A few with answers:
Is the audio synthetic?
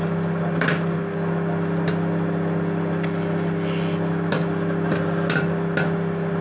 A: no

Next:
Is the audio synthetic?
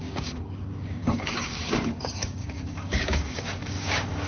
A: yes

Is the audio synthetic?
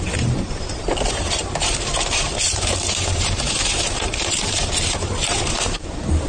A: yes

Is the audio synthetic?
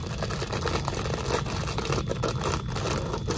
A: no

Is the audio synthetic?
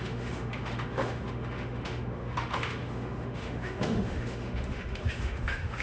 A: yes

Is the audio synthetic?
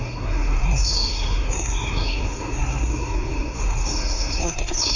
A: yes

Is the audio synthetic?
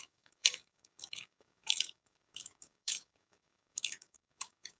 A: yes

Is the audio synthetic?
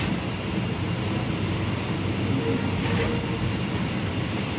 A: no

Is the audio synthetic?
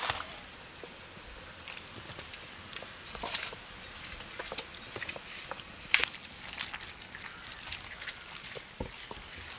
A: no